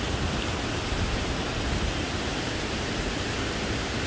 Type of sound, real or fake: real